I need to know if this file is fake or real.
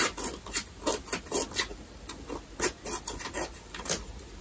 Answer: real